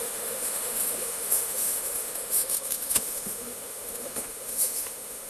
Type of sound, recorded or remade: remade